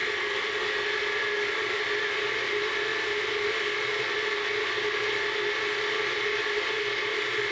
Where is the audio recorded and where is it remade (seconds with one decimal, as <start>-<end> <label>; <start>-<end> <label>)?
0.0-7.5 recorded